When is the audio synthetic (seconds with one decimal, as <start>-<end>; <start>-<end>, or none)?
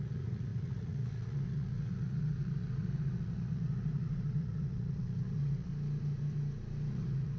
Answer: 0.0-5.7; 6.9-7.4